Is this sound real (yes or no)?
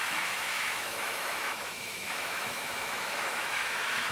no